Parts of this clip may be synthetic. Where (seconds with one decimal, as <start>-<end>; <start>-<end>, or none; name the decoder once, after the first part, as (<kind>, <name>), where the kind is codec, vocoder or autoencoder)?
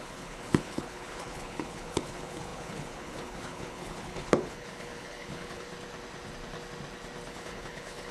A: 0.0-5.7 (codec, HILCodec); 7.3-8.1